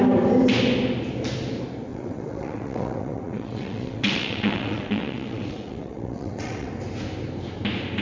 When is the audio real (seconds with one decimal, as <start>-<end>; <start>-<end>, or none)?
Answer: 0.0-1.9; 6.7-8.0

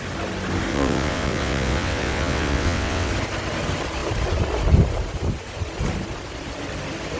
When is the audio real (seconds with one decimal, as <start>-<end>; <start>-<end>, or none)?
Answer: 0.0-0.7; 3.1-7.2

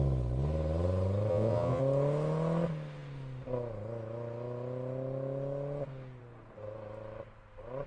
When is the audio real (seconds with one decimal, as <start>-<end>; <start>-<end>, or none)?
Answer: 0.0-1.3; 1.8-7.9